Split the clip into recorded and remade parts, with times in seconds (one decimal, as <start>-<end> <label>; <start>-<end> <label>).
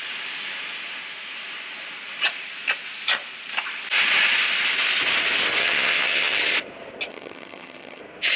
0.0-5.6 recorded; 5.6-6.4 remade; 6.4-7.1 recorded; 7.1-8.0 remade; 8.0-8.4 recorded